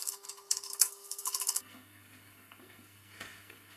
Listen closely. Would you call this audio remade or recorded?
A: remade